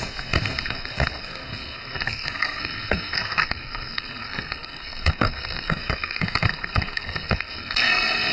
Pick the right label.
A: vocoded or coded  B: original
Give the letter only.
A